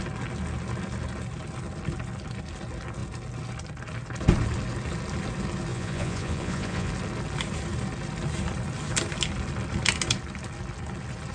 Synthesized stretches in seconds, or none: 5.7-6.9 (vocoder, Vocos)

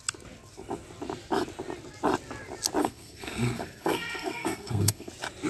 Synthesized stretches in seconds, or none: 2.8-5.1 (codec, SNAC)

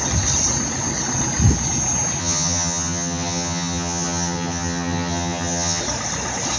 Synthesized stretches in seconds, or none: 2.2-5.8 (vocoder, HiFi-GAN)

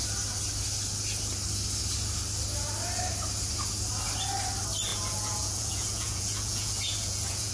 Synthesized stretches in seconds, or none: 4.9-7.5 (vocoder, Vocos)